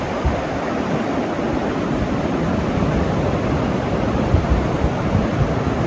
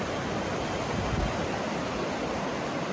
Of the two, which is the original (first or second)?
second